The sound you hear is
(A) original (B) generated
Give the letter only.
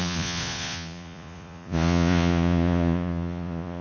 B